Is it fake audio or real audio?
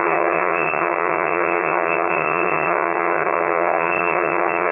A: fake